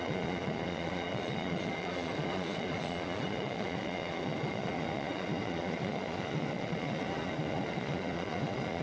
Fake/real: fake